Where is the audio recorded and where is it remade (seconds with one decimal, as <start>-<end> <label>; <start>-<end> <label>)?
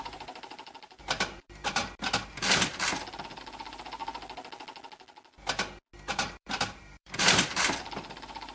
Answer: 0.0-1.8 remade; 1.8-3.2 recorded; 3.2-4.0 remade; 4.0-6.1 recorded; 6.1-8.5 remade